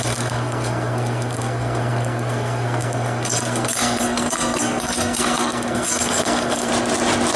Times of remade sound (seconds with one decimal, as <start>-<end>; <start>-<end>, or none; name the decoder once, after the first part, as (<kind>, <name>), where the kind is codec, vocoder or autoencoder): 0.0-6.7 (codec, SNAC)